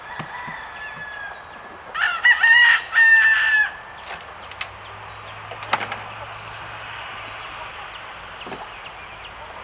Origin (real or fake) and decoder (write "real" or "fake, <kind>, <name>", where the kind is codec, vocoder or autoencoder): real